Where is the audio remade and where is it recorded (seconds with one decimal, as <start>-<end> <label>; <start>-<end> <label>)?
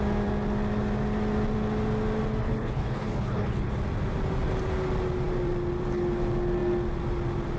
0.0-2.4 recorded; 2.4-3.7 remade; 3.7-7.6 recorded